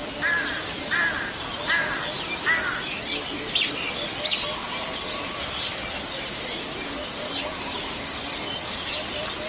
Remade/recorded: remade